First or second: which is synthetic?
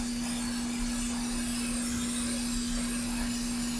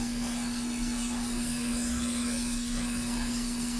second